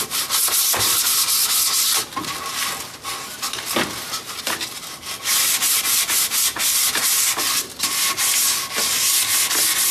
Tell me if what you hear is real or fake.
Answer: real